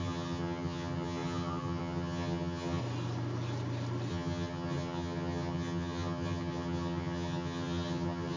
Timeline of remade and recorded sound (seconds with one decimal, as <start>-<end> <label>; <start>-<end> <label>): 0.0-2.8 remade; 2.8-4.1 recorded; 4.1-8.4 remade

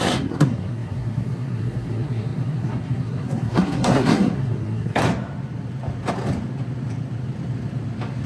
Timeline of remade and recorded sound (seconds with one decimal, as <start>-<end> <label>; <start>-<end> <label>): 0.0-5.0 remade; 5.0-8.3 recorded

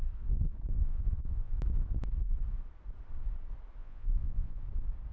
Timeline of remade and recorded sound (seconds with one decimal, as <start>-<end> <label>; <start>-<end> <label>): 0.0-0.7 recorded; 0.7-1.5 remade; 1.5-3.8 recorded; 3.8-4.6 remade; 4.6-5.1 recorded

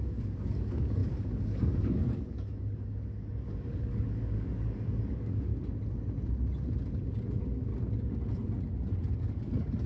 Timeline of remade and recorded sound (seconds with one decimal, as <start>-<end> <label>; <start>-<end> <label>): 0.0-5.5 remade; 5.5-7.3 recorded; 7.3-7.7 remade; 7.7-9.0 recorded; 9.0-9.9 remade

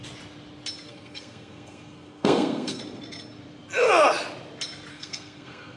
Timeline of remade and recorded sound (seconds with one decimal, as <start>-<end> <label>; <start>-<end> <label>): 0.0-0.9 recorded; 0.9-2.8 remade; 2.8-4.9 recorded; 4.9-5.8 remade